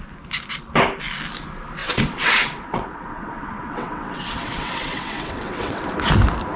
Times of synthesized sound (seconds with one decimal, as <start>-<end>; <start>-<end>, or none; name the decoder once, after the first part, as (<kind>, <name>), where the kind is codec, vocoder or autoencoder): 1.8-5.8 (vocoder, WaveNeXt)